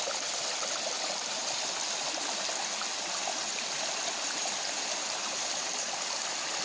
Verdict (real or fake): real